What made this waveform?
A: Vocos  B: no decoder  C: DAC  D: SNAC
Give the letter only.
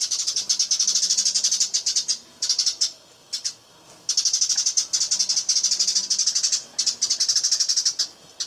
B